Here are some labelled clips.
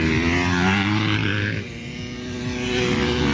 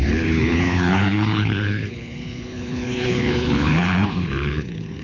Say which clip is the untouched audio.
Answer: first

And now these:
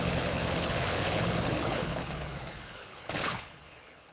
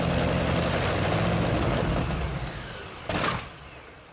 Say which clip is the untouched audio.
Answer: second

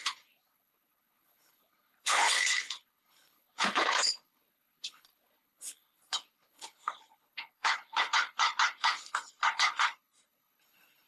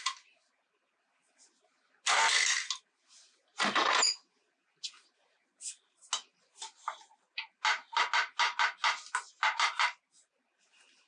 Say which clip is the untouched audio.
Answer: second